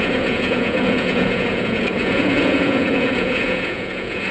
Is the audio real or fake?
fake